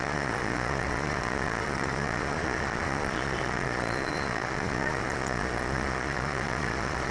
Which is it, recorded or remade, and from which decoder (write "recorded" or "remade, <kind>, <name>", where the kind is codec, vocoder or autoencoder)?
remade, vocoder, Vocos